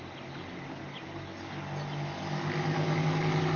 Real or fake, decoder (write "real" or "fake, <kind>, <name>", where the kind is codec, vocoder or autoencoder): real